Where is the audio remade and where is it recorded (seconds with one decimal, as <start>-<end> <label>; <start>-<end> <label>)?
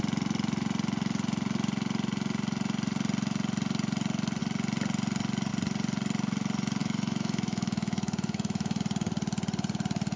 0.0-6.8 recorded; 6.8-8.8 remade; 8.8-10.2 recorded